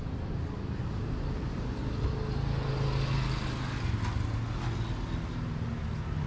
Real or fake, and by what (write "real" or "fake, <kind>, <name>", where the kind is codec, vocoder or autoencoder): real